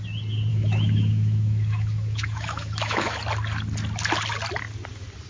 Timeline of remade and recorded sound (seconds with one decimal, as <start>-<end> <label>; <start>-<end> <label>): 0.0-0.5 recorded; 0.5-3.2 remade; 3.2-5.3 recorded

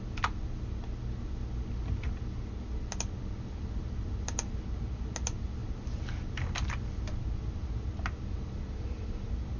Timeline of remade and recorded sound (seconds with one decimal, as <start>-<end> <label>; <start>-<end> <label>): 0.0-9.6 recorded

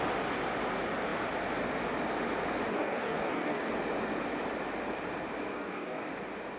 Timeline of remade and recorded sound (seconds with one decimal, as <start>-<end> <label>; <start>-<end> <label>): 0.0-2.7 recorded; 2.7-3.7 remade; 3.7-5.5 recorded; 5.5-6.1 remade; 6.1-6.6 recorded

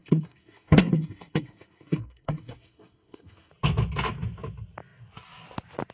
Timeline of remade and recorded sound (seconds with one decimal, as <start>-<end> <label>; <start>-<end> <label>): 0.0-3.5 remade; 3.5-5.9 recorded